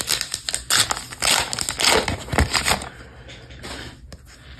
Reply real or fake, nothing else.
real